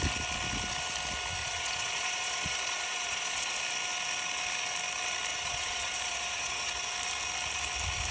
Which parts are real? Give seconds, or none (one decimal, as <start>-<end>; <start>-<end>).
0.0-1.4; 3.6-5.3; 6.7-8.1

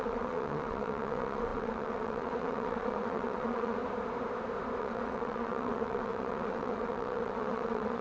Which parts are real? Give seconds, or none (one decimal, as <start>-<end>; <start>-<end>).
3.8-4.8

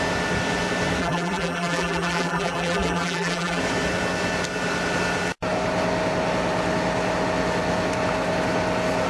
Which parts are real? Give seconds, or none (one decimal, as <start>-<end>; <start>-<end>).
0.0-1.0; 3.6-9.1

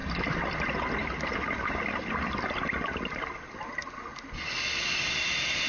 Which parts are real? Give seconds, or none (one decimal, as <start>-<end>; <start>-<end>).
0.0-5.7

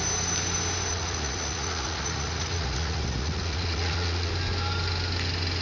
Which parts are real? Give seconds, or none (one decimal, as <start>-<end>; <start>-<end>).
0.0-0.9; 4.3-5.6

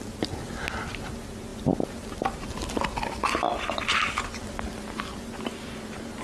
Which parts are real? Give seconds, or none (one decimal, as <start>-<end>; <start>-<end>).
0.0-6.2